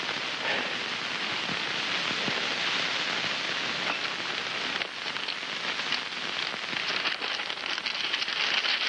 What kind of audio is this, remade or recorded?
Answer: recorded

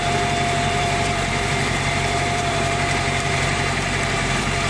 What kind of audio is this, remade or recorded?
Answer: remade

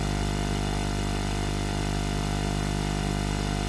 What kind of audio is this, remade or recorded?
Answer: recorded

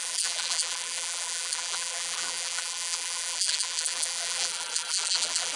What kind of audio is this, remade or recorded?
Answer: remade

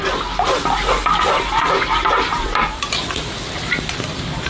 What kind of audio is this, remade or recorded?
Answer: recorded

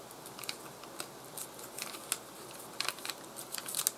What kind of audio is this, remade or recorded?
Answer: recorded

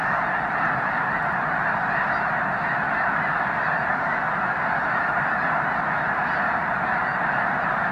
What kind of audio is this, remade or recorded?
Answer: recorded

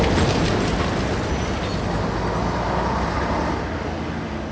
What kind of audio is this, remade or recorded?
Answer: recorded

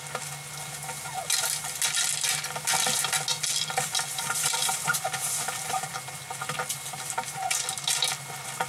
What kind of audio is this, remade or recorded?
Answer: recorded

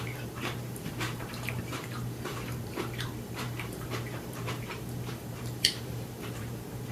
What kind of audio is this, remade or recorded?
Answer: remade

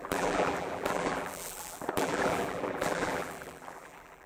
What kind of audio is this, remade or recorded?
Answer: remade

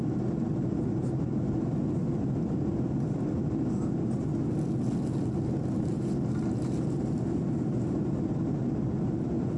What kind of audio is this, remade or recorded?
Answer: recorded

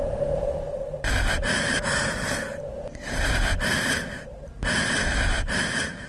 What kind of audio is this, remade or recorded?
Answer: remade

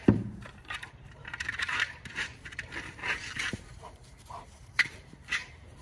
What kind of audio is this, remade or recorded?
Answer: remade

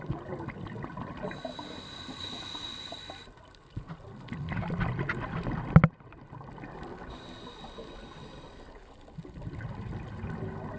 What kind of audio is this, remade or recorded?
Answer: recorded